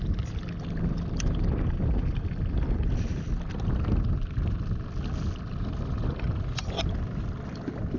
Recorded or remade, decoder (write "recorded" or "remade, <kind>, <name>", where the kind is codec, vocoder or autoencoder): recorded